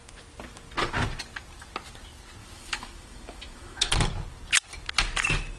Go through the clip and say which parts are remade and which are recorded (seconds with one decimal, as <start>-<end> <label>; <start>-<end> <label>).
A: 0.0-2.4 recorded; 2.4-3.9 remade; 3.9-5.6 recorded